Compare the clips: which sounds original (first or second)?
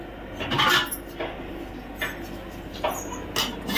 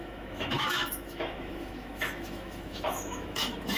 first